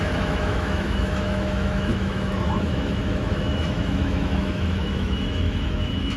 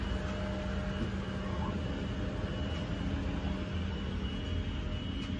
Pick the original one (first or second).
second